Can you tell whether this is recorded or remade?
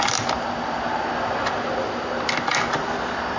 recorded